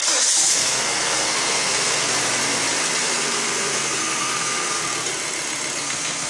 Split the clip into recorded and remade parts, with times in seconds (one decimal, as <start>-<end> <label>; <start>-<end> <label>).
0.0-0.5 recorded; 0.5-2.1 remade; 2.1-3.0 recorded; 3.0-4.8 remade; 4.8-5.8 recorded; 5.8-6.3 remade